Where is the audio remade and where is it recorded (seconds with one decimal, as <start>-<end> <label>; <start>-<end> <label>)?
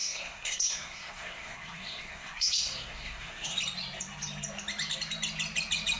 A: 0.0-3.6 remade; 3.6-6.0 recorded